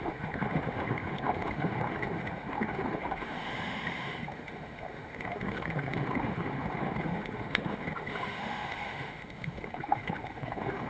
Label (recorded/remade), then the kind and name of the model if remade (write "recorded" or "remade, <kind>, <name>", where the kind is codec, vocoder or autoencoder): remade, autoencoder, DAC-VAE